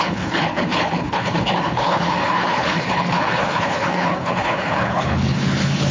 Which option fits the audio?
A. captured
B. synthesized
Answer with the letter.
B